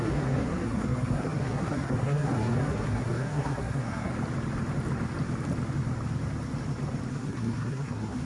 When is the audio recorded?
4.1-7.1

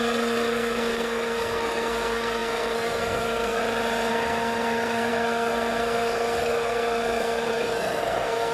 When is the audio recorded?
3.6-4.1